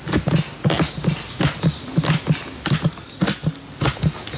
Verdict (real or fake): real